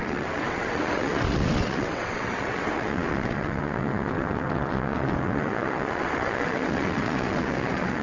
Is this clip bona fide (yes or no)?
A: no